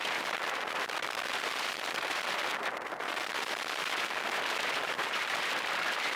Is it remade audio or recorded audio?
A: remade